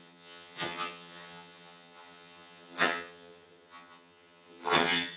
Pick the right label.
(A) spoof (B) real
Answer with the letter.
A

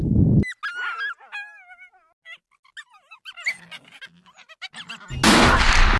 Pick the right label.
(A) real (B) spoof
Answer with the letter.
A